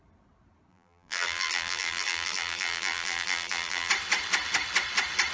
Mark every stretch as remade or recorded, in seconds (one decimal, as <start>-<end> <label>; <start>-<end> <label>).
0.0-0.7 recorded; 0.7-3.9 remade; 3.9-5.3 recorded